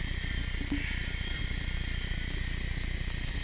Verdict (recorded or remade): recorded